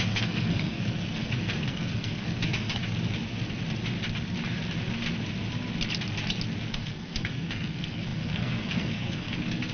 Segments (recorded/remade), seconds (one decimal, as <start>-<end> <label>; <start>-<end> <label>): 0.0-2.8 remade; 2.8-6.7 recorded; 6.7-9.7 remade